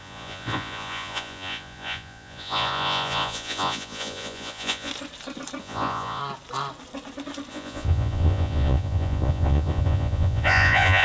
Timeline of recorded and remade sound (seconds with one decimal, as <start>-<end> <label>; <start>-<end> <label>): 0.0-4.9 remade; 4.9-5.6 recorded; 5.6-6.2 remade; 6.2-7.5 recorded; 7.5-11.0 remade